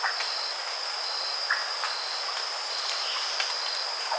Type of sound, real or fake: real